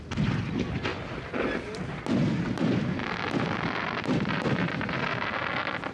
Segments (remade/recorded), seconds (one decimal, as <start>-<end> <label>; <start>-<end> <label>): 0.0-5.9 recorded